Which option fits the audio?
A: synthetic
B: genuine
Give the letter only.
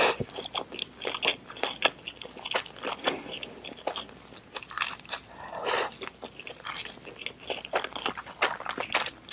B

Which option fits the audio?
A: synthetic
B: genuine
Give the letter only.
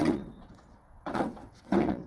A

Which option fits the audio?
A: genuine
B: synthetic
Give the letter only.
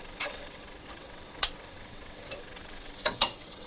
B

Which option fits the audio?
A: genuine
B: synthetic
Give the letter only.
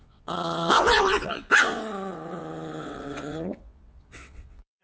B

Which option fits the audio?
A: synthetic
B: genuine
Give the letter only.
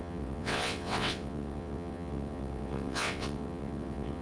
A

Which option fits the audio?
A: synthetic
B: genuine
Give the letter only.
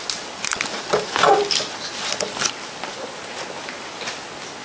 B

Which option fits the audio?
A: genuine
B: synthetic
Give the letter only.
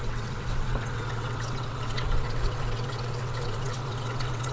B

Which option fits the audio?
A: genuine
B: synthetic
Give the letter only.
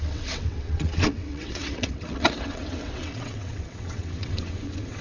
B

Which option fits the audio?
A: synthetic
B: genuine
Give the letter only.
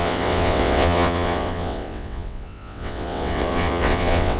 A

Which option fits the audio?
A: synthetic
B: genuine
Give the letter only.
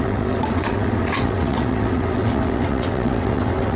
A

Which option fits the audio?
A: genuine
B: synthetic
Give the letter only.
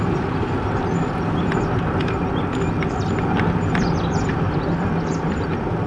A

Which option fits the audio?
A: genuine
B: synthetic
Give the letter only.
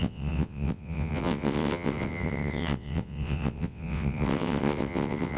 B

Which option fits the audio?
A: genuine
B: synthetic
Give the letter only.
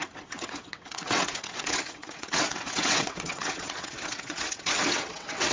B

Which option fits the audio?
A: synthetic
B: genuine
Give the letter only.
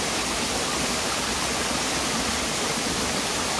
B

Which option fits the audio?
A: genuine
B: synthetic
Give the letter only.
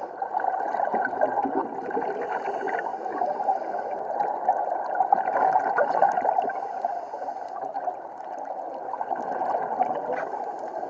A